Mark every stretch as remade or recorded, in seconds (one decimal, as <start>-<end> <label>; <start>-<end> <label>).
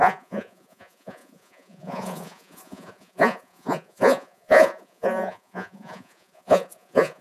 0.0-7.2 remade